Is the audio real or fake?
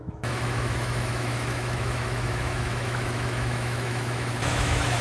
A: fake